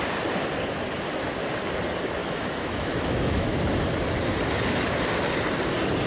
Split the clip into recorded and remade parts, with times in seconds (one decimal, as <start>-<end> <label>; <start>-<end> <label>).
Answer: 0.0-2.2 recorded; 2.2-3.6 remade; 3.6-6.1 recorded